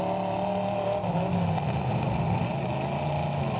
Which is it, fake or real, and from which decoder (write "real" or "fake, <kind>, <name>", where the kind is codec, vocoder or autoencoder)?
real